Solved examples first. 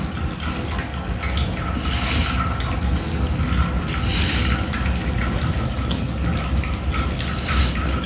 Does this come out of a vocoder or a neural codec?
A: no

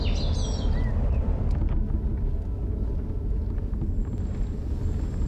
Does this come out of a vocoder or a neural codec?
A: no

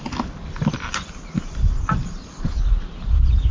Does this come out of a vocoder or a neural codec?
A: no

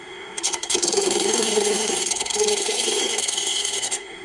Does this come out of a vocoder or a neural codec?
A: yes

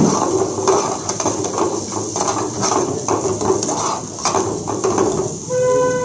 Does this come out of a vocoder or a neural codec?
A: no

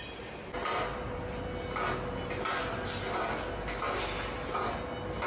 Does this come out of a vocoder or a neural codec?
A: no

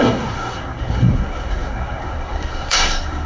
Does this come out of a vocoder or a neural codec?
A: yes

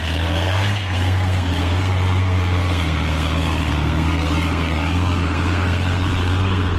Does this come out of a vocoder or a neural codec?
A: yes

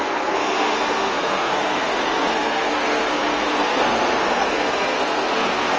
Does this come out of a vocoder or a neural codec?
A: yes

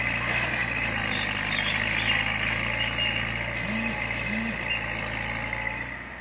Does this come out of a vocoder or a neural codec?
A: no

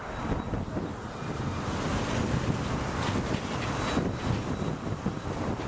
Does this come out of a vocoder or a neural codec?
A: no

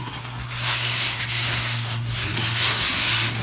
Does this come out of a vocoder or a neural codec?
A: yes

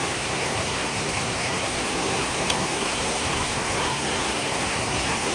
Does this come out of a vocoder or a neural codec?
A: yes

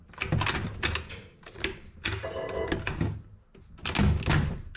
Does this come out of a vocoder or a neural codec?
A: no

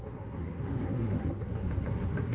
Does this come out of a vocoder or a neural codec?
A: yes